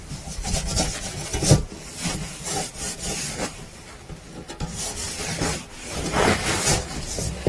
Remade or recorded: recorded